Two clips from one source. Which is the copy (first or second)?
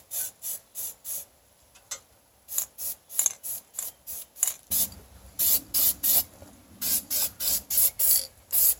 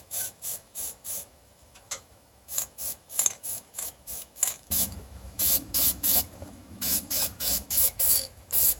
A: second